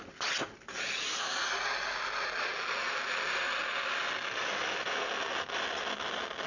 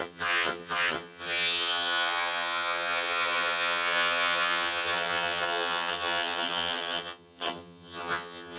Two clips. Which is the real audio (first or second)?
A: first